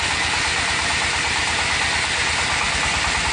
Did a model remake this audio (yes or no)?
no